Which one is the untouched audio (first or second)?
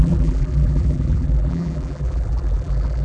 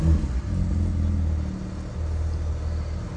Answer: second